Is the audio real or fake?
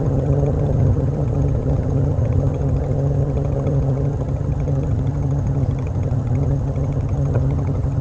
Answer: fake